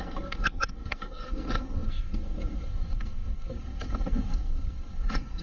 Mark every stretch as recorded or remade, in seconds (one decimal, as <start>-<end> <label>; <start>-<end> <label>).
0.0-5.4 remade